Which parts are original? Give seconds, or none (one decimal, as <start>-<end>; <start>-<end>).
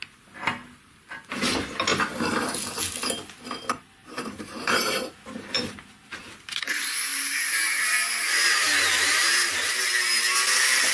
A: 0.0-4.0; 6.6-7.1; 9.7-10.9